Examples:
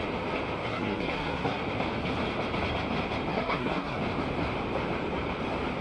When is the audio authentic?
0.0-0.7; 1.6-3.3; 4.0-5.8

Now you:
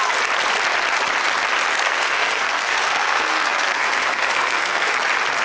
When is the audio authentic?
0.0-1.7; 4.9-5.4

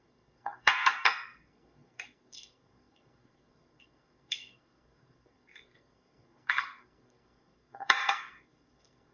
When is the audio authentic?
none

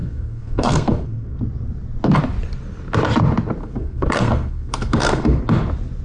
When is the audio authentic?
1.4-3.6; 5.4-6.0

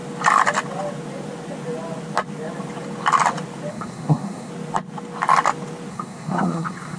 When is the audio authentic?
0.0-3.7; 4.5-5.9

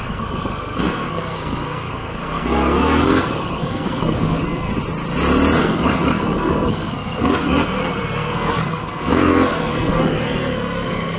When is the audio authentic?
4.7-5.6